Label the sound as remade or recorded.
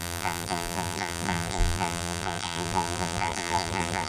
remade